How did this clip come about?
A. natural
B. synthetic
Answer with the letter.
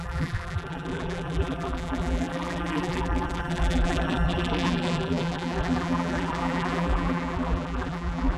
B